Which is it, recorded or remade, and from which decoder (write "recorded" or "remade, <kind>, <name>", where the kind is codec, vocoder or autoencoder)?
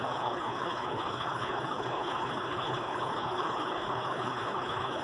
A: remade, codec, HILCodec